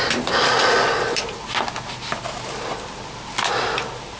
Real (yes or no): yes